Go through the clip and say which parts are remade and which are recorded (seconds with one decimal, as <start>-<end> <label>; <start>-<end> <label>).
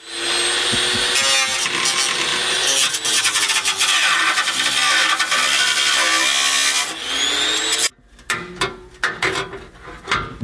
0.0-10.4 recorded